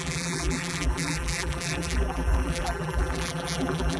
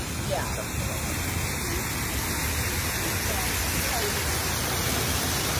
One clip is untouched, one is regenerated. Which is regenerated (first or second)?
first